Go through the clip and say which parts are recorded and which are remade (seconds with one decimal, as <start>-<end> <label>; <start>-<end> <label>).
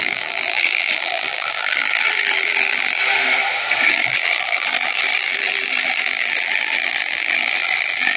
0.0-3.0 remade; 3.0-3.9 recorded; 3.9-8.2 remade